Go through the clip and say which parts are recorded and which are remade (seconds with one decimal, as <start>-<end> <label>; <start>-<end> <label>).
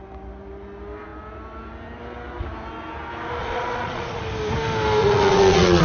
0.0-3.4 recorded; 3.4-4.2 remade; 4.2-5.0 recorded; 5.0-5.8 remade